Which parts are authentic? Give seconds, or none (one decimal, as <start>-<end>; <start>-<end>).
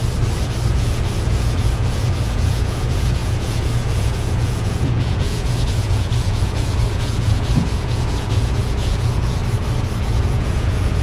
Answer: 0.0-0.7; 9.4-10.0